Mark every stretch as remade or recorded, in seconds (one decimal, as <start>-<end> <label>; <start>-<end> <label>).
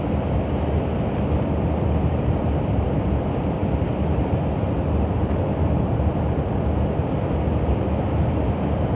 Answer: 0.0-9.0 remade